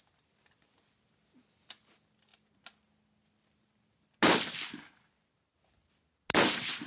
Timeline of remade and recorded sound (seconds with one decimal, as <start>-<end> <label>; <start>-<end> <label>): 0.0-6.9 recorded